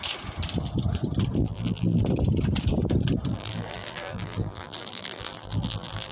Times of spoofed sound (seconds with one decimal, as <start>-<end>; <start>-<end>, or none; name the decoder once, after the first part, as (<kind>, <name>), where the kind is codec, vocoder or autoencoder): 1.4-2.0 (vocoder, BigVGAN v2); 3.3-6.1